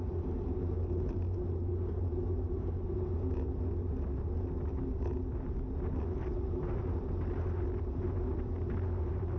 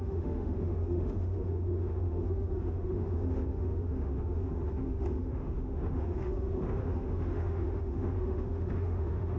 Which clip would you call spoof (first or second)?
second